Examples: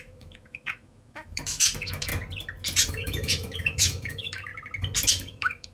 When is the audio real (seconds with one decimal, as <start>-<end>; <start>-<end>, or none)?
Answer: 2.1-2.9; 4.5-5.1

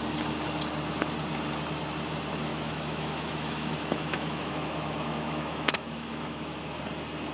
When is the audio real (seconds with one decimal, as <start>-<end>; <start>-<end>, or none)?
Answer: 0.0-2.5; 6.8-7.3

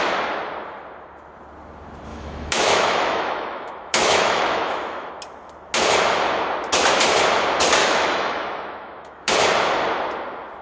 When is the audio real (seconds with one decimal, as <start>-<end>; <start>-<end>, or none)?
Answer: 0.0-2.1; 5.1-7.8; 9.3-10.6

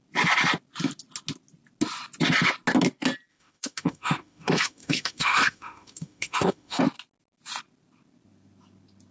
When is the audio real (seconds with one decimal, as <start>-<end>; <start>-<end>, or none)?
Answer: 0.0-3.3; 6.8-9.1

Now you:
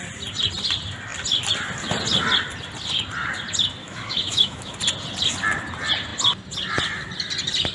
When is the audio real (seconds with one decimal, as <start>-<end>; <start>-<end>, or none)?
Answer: 0.0-3.8; 4.7-7.7

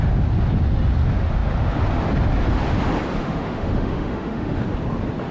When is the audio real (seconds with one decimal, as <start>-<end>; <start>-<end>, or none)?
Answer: 0.0-3.2; 4.6-5.3

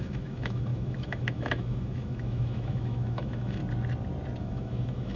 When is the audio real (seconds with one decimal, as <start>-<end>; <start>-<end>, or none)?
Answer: 3.6-4.4

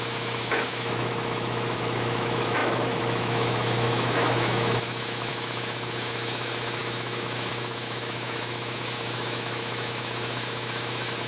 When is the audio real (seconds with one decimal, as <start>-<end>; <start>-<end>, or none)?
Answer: none